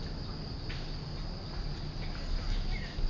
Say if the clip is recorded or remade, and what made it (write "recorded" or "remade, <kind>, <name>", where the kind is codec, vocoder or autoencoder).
recorded